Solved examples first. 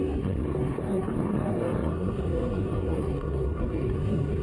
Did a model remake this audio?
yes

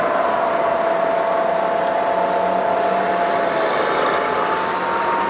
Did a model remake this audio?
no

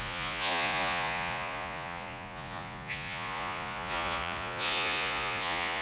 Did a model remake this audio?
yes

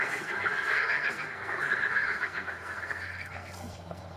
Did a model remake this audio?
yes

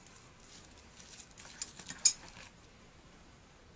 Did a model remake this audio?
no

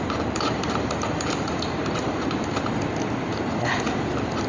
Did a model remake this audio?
no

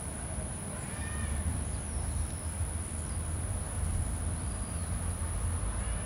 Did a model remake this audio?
no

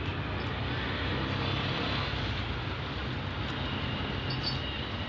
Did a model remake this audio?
no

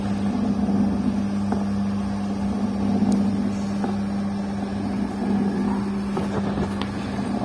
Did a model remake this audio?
no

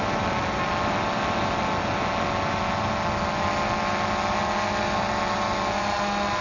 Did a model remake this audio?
no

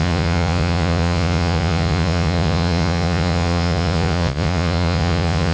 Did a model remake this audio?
yes